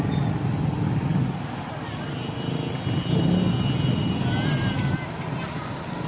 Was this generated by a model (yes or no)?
no